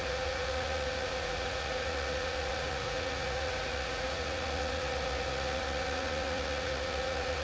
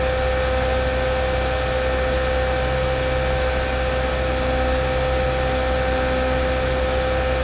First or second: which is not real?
first